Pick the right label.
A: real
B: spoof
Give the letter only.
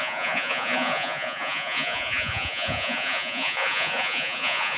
B